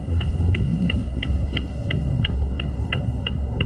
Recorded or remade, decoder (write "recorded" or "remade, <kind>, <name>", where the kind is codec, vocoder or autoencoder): remade, codec, SNAC